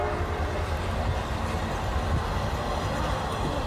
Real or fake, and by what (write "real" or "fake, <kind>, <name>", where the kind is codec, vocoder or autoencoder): fake, vocoder, BigVGAN v2